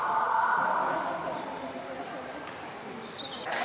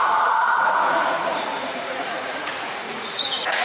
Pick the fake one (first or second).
second